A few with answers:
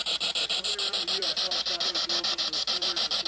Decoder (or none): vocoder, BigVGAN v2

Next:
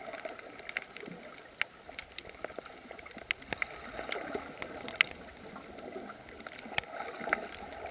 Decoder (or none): none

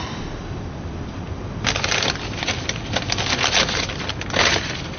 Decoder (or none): none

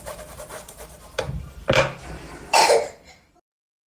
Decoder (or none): vocoder, BigVGAN v2